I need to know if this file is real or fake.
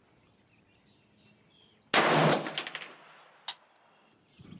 real